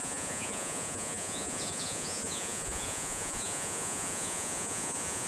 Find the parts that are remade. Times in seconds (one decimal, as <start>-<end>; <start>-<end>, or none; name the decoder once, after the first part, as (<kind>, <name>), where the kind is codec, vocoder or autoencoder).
0.0-5.3 (vocoder, Vocos)